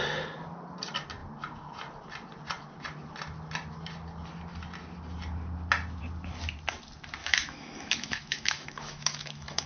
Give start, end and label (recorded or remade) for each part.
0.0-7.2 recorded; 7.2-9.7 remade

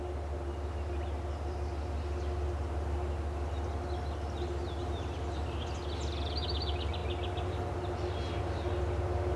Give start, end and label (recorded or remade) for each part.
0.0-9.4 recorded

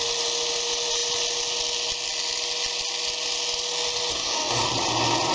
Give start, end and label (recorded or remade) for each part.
0.0-4.1 recorded; 4.1-4.6 remade; 4.6-5.3 recorded

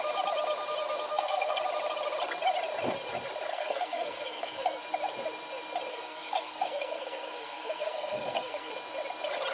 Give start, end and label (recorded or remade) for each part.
0.0-1.1 recorded; 1.1-1.6 remade; 1.6-3.5 recorded; 3.5-4.8 remade; 4.8-5.9 recorded; 5.9-8.7 remade; 8.7-9.5 recorded